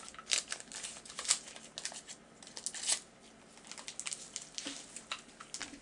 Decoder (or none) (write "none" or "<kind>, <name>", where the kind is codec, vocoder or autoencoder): none